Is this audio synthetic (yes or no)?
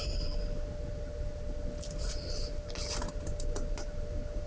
no